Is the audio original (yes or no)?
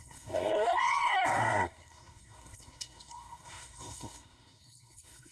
no